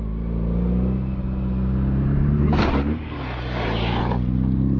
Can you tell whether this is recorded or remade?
recorded